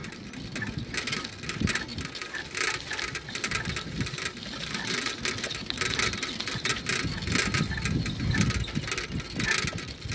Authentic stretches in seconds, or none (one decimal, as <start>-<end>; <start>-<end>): 0.0-10.1